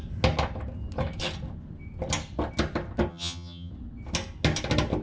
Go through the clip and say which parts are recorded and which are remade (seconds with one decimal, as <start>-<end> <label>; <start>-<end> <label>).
0.0-3.1 recorded; 3.1-3.7 remade; 3.7-5.0 recorded